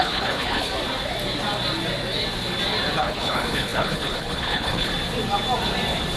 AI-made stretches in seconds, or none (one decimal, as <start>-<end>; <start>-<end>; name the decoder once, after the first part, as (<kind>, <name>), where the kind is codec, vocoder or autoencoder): 0.0-0.7 (codec, HILCodec); 3.0-4.9